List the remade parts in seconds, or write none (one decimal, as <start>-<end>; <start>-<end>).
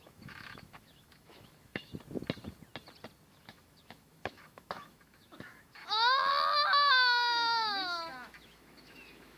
0.0-1.9; 3.3-6.3; 6.9-9.4